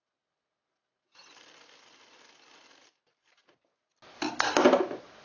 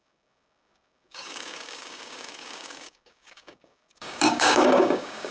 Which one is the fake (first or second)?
second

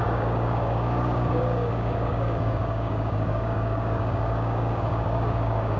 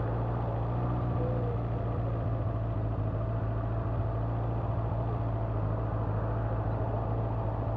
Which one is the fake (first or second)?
first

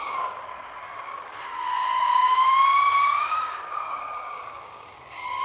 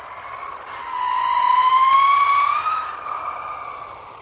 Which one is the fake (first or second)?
first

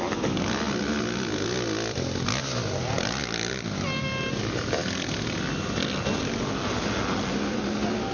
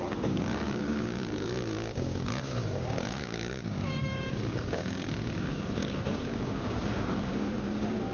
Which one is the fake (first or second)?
second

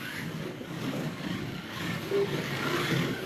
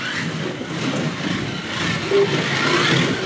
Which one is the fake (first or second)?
first